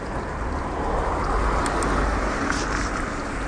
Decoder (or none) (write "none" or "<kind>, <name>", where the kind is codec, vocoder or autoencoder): none